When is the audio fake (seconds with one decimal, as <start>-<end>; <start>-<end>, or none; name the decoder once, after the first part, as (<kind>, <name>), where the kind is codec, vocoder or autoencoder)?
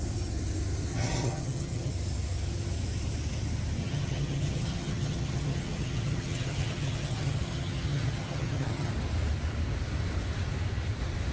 0.9-1.9 (vocoder, HiFi-GAN); 3.8-8.9